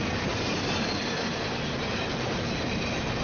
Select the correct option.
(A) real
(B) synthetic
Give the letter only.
B